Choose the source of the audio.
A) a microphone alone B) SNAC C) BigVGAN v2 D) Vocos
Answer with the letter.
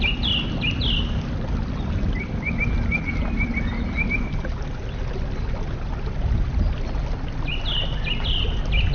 A